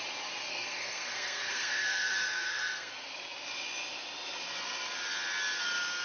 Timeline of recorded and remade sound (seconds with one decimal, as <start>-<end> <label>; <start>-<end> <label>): 0.0-0.5 recorded; 0.5-2.9 remade; 2.9-6.0 recorded